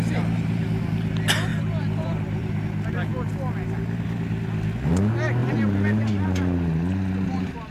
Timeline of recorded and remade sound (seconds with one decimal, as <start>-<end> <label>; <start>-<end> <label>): 0.0-1.5 recorded; 1.5-2.5 remade; 2.5-7.7 recorded